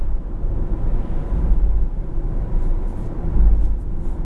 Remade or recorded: recorded